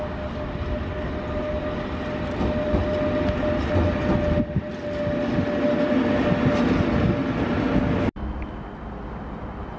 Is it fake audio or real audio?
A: real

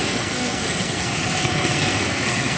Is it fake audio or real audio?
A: fake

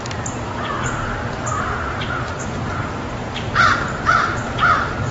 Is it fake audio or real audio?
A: fake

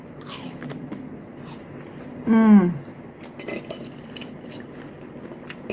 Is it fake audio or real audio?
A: real